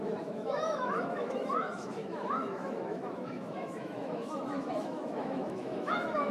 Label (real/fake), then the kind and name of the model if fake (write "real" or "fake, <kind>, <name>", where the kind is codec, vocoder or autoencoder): fake, autoencoder, DAC-VAE